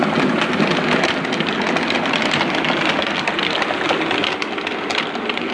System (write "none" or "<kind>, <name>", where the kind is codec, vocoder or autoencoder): none